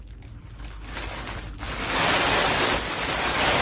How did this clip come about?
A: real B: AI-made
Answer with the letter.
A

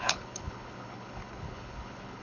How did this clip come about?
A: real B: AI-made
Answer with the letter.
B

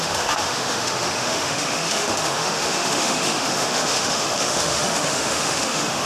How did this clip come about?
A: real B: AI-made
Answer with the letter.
B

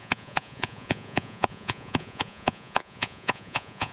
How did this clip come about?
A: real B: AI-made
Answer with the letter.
B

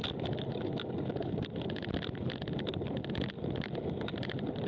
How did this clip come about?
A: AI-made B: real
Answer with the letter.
B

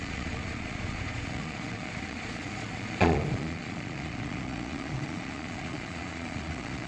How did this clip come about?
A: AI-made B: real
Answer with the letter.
A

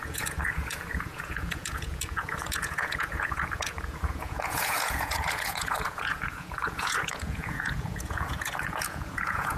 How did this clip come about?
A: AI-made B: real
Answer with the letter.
A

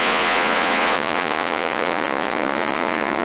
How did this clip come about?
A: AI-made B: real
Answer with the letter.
A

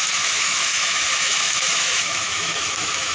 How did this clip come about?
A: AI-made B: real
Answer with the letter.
A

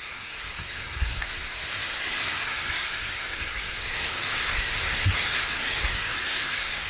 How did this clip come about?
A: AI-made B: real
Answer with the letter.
A